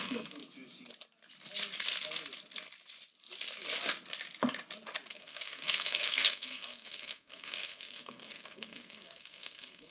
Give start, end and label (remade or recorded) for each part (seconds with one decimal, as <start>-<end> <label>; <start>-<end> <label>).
0.0-0.4 remade; 0.4-5.1 recorded; 5.1-9.9 remade